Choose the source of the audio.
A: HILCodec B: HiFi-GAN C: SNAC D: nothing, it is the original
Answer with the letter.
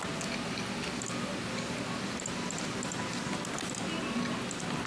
D